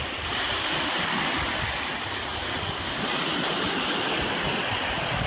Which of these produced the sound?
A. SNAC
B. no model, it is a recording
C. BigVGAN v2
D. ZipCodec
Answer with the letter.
B